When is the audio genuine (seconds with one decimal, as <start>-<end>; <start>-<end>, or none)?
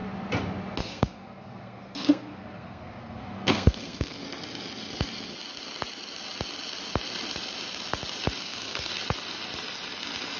0.0-0.8; 4.2-8.4; 8.9-10.4